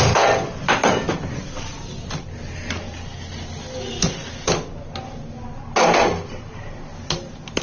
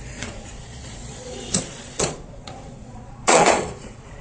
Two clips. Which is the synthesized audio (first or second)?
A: second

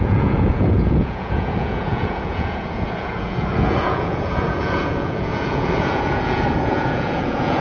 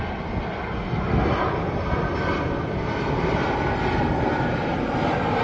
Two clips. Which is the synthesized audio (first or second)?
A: first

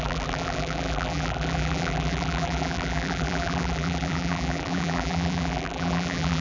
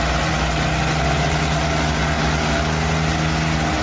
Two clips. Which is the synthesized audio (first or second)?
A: first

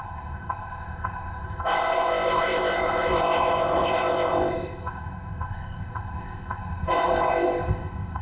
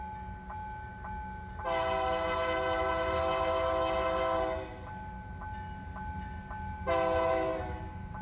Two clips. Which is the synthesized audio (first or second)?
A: first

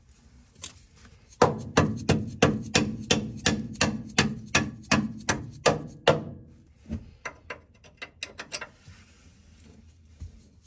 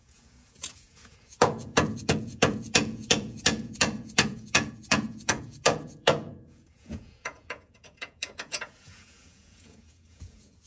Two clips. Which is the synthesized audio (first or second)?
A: second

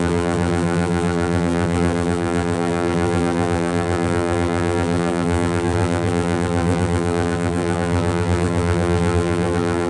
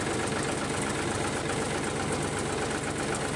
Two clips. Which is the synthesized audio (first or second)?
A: first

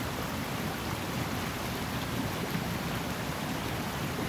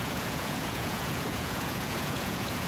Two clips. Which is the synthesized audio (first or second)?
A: second